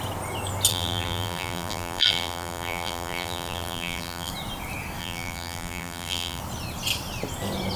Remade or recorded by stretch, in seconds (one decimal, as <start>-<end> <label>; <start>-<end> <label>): 0.0-0.7 recorded; 0.7-4.3 remade; 4.3-5.0 recorded; 5.0-6.4 remade; 6.4-7.8 recorded